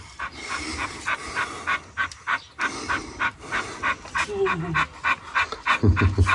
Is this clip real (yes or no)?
yes